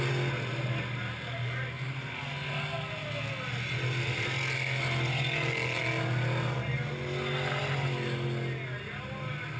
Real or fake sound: real